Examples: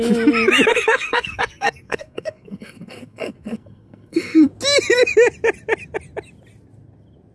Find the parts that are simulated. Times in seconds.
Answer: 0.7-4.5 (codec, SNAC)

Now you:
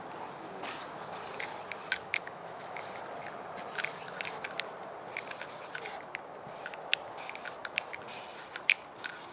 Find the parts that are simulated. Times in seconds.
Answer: 1.8-2.9 (autoencoder, DAC-VAE)

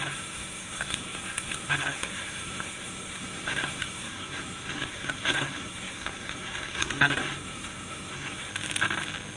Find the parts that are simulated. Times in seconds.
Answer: 0.0-8.5 (codec, SNAC)